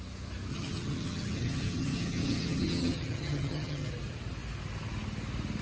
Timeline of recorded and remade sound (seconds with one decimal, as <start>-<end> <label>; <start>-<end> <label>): 0.0-0.5 recorded; 0.5-3.9 remade; 3.9-5.6 recorded